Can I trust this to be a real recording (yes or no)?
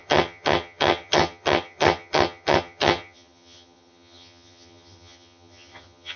no